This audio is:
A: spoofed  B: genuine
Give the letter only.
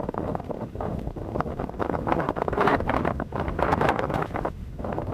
A